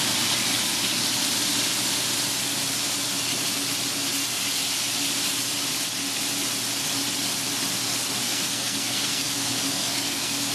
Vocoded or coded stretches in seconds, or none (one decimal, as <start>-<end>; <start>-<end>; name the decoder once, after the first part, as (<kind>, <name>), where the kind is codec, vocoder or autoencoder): 8.2-10.5 (codec, SNAC)